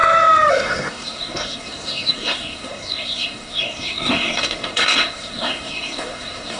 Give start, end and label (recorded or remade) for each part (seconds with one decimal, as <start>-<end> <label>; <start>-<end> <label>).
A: 0.0-0.5 recorded; 0.5-6.6 remade